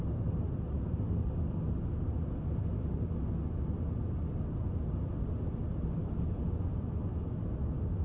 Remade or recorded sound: recorded